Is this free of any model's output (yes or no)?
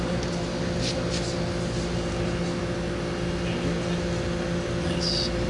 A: yes